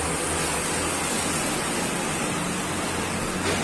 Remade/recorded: recorded